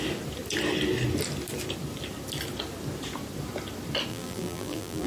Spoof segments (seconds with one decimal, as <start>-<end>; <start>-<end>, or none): 4.1-5.1